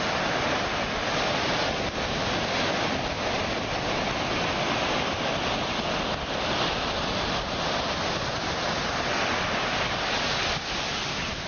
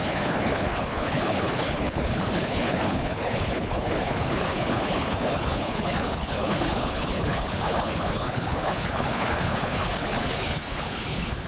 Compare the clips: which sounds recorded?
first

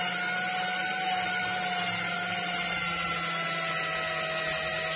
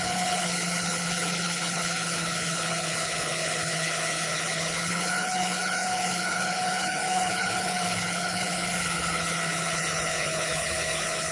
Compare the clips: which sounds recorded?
first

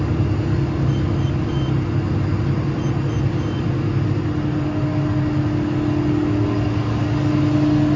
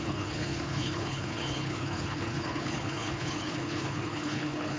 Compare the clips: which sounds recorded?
first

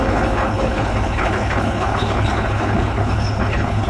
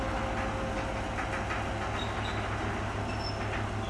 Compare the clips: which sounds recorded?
second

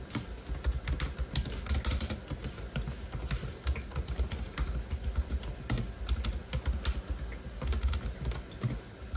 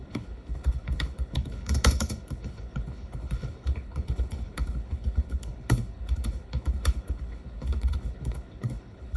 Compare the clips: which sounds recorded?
first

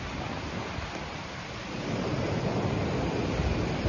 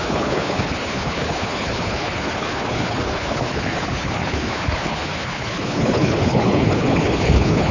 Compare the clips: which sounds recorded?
first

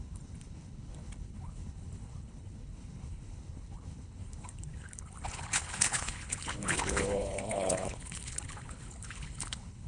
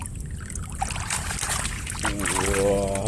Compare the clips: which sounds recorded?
second